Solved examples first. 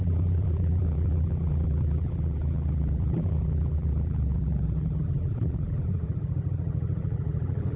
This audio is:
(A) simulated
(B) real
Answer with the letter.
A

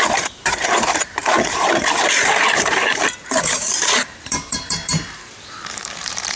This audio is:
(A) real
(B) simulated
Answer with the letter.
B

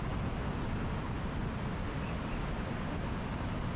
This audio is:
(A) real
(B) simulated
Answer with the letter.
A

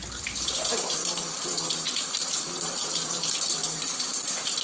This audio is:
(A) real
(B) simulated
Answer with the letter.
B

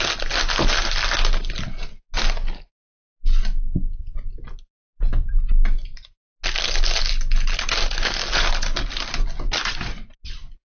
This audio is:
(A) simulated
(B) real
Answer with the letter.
B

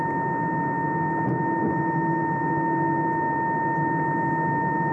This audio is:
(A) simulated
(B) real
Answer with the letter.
B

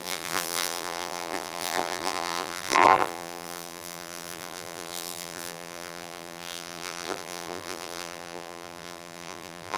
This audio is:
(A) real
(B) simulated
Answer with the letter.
B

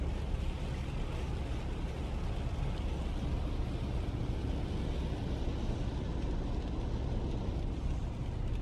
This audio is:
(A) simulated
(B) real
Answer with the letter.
B